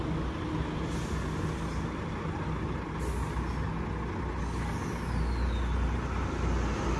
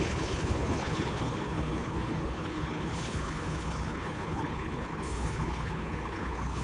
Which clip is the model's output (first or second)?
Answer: second